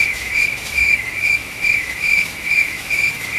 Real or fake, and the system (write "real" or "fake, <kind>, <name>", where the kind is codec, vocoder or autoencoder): fake, autoencoder, DAC-VAE